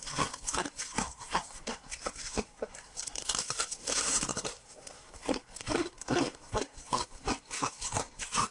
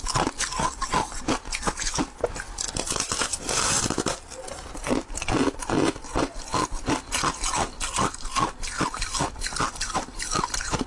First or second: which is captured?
second